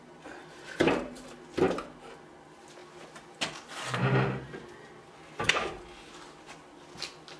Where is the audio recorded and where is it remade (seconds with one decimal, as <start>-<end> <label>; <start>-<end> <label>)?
0.0-0.4 recorded; 0.4-1.4 remade; 1.4-7.4 recorded